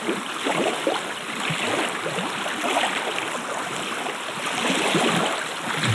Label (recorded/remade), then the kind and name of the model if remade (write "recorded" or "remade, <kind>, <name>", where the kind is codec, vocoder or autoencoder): recorded